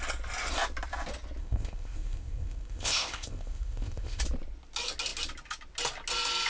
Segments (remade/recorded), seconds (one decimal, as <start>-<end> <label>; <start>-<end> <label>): 0.0-1.4 recorded; 1.4-4.2 remade; 4.2-6.5 recorded